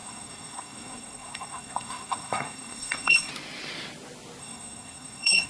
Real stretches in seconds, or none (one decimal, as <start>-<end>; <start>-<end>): 3.3-4.4